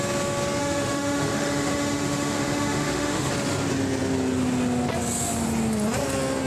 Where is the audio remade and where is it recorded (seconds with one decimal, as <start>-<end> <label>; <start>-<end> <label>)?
0.0-0.6 recorded; 0.6-3.3 remade; 3.3-6.5 recorded